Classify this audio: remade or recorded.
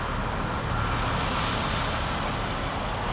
recorded